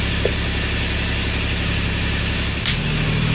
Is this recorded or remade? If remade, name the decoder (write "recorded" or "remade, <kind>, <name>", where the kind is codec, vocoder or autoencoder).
recorded